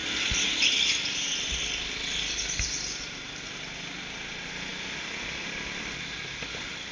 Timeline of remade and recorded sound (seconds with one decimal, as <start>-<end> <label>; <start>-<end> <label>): 0.0-6.9 recorded